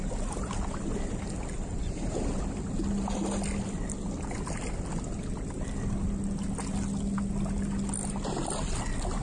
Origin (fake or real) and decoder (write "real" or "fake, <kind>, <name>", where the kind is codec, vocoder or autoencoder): real